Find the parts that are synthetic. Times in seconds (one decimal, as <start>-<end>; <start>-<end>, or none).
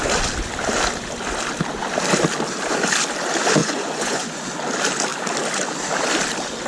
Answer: 3.6-4.4